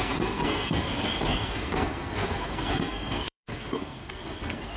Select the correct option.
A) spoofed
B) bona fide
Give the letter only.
A